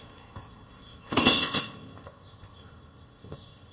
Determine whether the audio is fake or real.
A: fake